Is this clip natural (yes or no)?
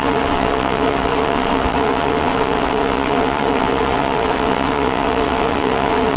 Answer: no